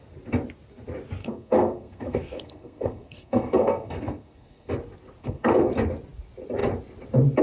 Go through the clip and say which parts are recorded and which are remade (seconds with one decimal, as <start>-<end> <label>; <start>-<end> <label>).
0.0-1.2 recorded; 1.2-4.7 remade; 4.7-5.2 recorded; 5.2-5.7 remade; 5.7-7.4 recorded